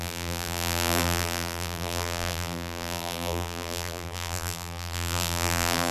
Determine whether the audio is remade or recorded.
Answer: remade